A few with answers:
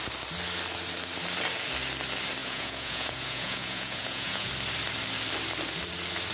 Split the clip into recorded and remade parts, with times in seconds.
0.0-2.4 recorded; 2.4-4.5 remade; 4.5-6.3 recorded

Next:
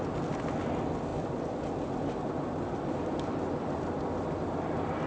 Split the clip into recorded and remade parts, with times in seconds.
0.0-5.1 recorded

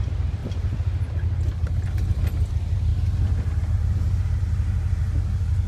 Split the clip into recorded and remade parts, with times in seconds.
0.0-0.4 recorded; 0.4-2.5 remade; 2.5-2.9 recorded; 2.9-4.2 remade; 4.2-5.7 recorded

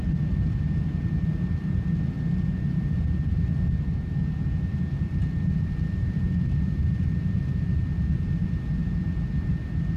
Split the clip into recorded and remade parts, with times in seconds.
0.0-10.0 recorded

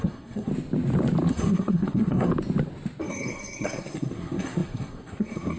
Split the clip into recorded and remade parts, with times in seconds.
0.0-0.5 remade; 0.5-1.3 recorded; 1.3-2.3 remade; 2.3-3.1 recorded; 3.1-5.6 remade